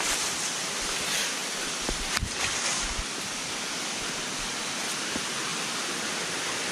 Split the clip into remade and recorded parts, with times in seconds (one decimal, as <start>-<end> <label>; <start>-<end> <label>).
0.0-6.7 recorded